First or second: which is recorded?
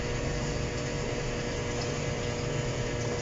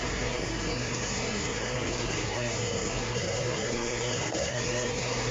first